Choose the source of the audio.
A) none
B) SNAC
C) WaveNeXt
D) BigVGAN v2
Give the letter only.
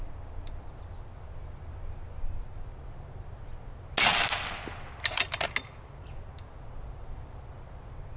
A